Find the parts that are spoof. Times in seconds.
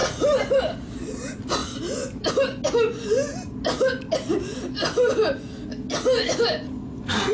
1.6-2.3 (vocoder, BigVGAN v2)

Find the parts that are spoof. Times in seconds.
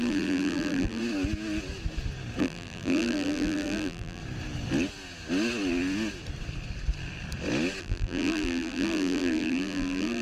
0.0-1.0 (vocoder, BigVGAN v2); 2.4-4.2; 7.8-10.2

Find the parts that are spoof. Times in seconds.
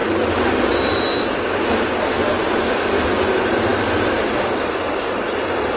0.0-1.0 (vocoder, BigVGAN v2)